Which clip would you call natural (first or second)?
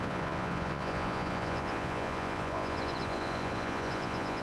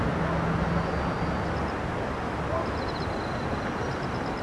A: second